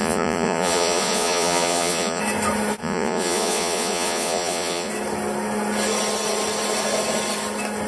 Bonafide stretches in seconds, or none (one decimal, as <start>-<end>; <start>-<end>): 2.2-2.8; 4.9-7.9